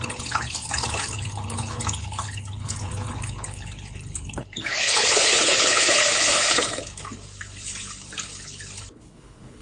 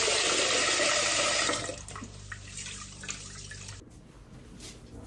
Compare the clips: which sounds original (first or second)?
second